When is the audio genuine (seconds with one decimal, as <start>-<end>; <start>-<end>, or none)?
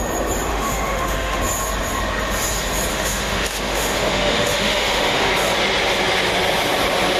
0.0-0.5; 1.4-2.9; 5.3-7.2